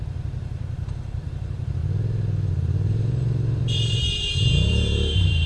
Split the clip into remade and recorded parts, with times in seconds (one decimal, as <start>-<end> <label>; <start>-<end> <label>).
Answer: 0.0-1.8 remade; 1.8-2.5 recorded; 2.5-5.5 remade